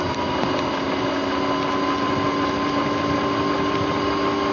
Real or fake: real